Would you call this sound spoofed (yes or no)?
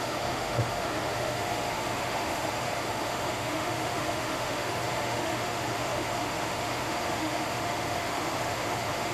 yes